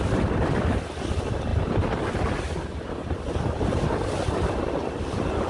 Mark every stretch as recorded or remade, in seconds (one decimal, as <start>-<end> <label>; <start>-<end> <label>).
0.0-1.5 remade; 1.5-2.4 recorded; 2.4-3.0 remade; 3.0-5.5 recorded